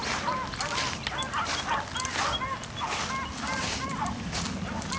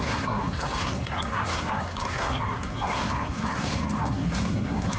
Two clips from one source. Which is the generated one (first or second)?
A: second